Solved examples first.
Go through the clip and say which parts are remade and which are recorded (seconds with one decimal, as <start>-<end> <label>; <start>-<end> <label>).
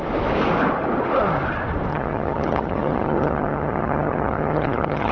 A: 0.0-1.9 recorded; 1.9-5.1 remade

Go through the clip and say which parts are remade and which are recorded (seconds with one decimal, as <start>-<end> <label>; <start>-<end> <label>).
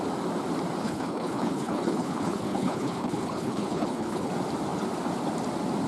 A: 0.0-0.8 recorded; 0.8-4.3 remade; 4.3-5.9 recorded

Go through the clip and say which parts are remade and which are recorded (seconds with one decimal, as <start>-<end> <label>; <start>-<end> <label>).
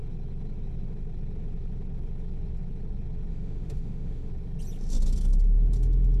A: 0.0-3.3 recorded; 3.3-4.3 remade; 4.3-6.2 recorded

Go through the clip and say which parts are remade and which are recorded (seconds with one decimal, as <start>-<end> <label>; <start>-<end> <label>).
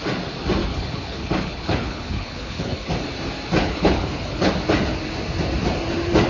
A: 0.0-0.6 recorded; 0.6-2.9 remade; 2.9-3.6 recorded; 3.6-4.5 remade; 4.5-6.3 recorded